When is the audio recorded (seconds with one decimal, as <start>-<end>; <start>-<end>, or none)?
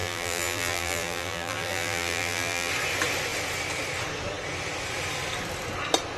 2.7-6.2